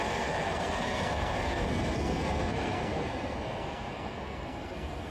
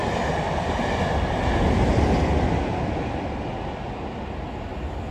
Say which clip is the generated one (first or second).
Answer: first